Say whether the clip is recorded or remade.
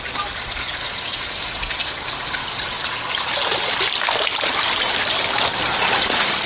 recorded